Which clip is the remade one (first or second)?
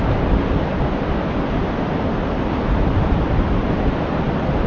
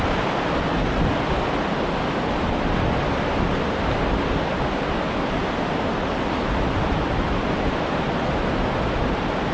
first